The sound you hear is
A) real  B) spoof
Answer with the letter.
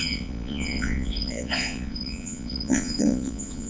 B